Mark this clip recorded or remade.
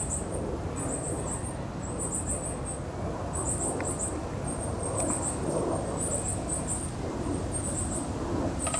recorded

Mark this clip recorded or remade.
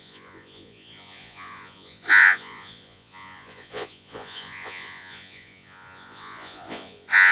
remade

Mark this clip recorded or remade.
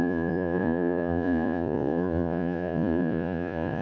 remade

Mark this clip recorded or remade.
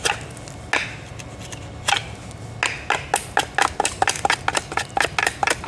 recorded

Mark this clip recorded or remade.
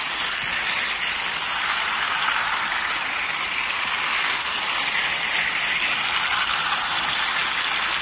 recorded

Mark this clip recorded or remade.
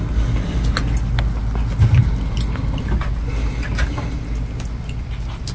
recorded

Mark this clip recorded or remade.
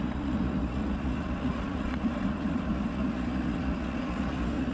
remade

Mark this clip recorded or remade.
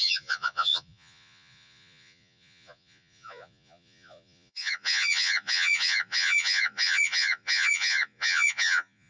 remade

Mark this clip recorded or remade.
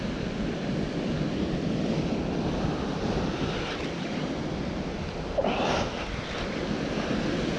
recorded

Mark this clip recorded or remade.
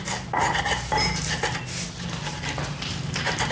recorded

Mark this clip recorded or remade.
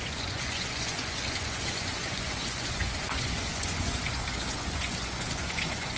remade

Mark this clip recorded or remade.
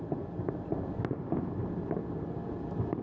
recorded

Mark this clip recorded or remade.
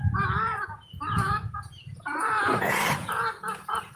remade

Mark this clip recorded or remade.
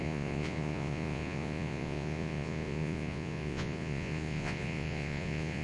remade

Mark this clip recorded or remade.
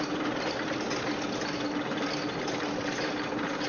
recorded